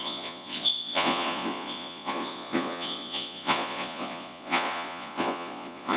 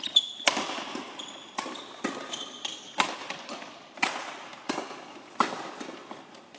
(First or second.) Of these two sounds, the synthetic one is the first